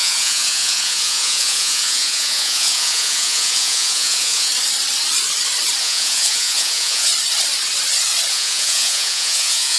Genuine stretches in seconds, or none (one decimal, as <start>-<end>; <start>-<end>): 4.5-5.8; 7.1-8.3